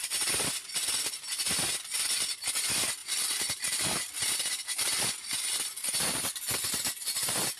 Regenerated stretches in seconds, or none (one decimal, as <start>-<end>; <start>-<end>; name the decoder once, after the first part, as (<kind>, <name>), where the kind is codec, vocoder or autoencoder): none